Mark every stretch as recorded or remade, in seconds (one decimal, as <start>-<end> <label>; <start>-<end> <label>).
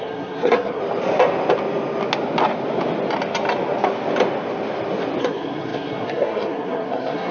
0.0-0.8 remade; 0.8-5.2 recorded; 5.2-7.3 remade